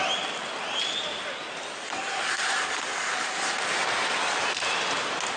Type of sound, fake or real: real